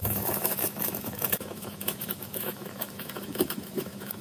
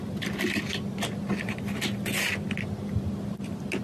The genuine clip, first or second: second